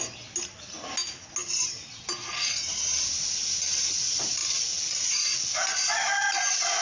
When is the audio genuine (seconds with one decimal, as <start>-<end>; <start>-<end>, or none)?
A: 0.0-6.8